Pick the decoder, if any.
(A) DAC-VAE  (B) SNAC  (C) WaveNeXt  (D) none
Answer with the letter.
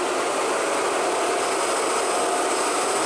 D